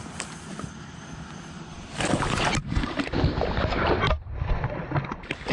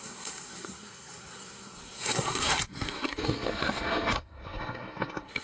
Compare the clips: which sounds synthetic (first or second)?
second